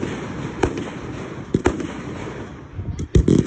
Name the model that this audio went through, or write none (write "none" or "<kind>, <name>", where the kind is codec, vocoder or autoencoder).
none